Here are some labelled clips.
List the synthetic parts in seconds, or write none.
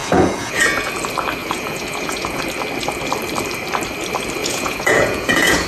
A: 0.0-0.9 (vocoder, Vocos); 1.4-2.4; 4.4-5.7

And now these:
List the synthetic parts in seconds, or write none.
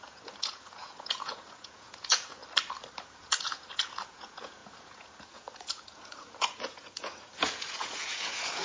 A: 0.0-2.4 (vocoder, Vocos); 3.0-8.6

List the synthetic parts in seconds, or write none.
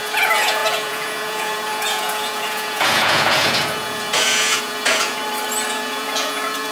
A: 0.0-5.2 (vocoder, Vocos); 5.7-6.7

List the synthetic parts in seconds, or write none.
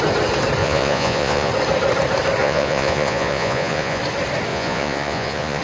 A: 0.6-1.5 (vocoder, Vocos); 2.4-4.0; 4.5-5.6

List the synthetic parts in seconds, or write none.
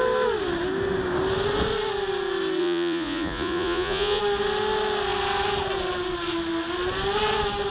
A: 2.6-4.2 (vocoder, Vocos)